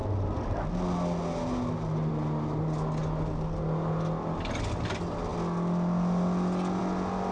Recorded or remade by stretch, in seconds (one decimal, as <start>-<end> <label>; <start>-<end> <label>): 0.0-7.3 recorded